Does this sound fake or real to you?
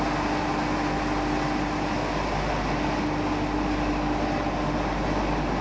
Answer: real